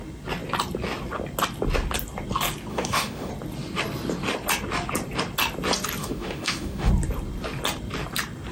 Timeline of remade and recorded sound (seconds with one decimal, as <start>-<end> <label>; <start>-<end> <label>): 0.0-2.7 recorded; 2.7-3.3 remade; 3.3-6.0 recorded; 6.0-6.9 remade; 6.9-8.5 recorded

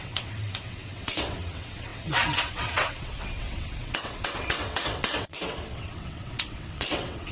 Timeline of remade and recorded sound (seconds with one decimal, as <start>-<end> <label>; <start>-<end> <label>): 0.0-7.3 remade

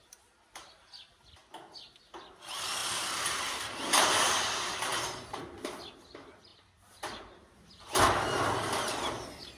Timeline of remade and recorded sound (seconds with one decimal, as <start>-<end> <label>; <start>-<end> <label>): 0.0-2.8 recorded; 2.8-4.1 remade; 4.1-9.6 recorded

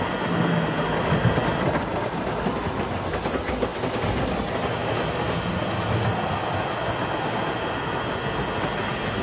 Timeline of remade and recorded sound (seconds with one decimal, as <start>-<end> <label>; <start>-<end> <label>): 0.0-3.7 recorded; 3.7-5.2 remade; 5.2-9.2 recorded

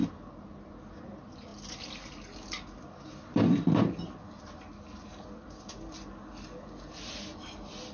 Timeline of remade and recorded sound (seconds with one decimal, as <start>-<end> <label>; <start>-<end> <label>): 0.0-7.9 recorded

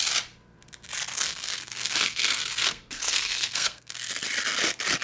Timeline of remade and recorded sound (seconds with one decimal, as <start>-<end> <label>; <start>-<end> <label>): 0.0-1.1 recorded; 1.1-4.1 remade; 4.1-5.0 recorded

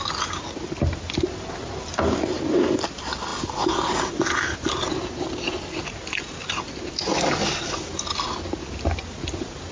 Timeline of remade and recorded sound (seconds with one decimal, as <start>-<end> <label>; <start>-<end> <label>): 0.0-9.7 recorded

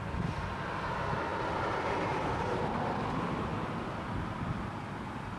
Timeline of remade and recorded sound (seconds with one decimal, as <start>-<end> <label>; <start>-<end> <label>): 0.0-5.4 recorded